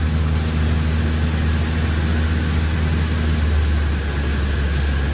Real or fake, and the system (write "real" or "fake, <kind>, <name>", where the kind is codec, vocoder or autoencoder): real